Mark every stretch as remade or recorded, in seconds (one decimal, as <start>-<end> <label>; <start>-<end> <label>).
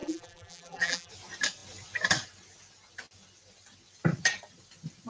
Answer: 0.0-1.1 remade; 1.1-5.1 recorded